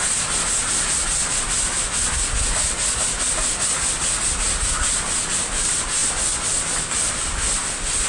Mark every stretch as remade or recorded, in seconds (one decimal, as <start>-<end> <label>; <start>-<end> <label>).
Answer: 0.0-8.1 recorded